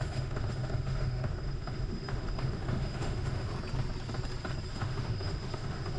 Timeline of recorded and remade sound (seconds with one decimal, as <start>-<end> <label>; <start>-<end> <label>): 0.0-3.5 remade; 3.5-4.7 recorded; 4.7-6.0 remade